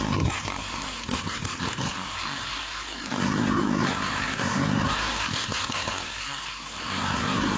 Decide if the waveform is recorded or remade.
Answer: remade